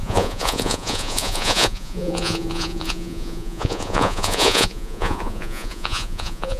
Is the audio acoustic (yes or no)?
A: no